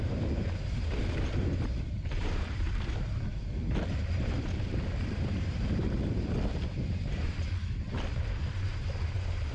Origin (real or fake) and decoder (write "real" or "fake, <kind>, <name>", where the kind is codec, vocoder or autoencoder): fake, vocoder, BigVGAN v2